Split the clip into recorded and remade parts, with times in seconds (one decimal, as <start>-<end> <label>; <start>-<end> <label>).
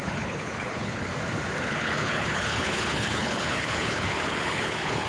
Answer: 0.0-1.1 remade; 1.1-1.6 recorded; 1.6-5.1 remade